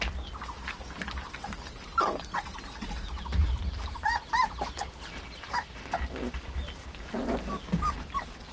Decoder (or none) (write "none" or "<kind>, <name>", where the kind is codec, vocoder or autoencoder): none